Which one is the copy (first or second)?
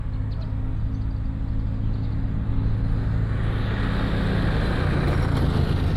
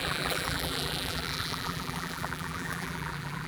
second